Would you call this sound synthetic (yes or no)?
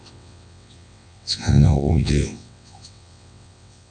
yes